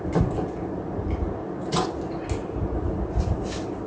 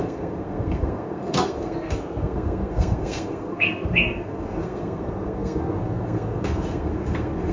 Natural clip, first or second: first